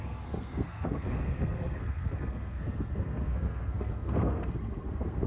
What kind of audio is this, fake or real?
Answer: fake